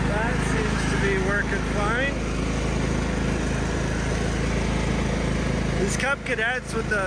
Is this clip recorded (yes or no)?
yes